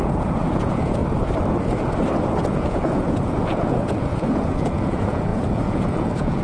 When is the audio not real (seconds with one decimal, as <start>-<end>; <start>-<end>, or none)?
0.0-1.0; 2.5-6.4